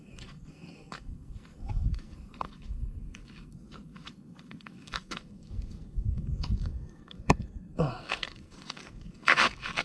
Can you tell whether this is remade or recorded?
remade